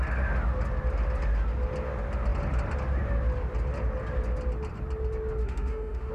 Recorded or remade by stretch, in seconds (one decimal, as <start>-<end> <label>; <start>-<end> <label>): 0.0-5.4 recorded; 5.4-6.1 remade